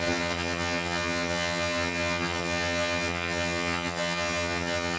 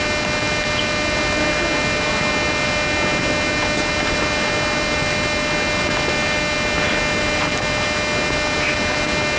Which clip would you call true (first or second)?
second